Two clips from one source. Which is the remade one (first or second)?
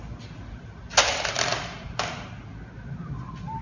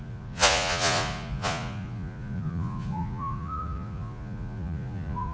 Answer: second